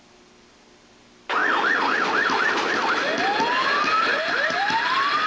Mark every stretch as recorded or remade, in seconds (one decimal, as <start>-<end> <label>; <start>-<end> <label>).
0.0-1.4 remade; 1.4-4.6 recorded; 4.6-5.3 remade